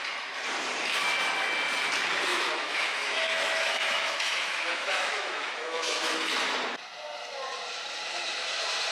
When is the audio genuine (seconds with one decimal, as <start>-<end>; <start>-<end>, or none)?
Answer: 0.0-2.3; 6.3-8.9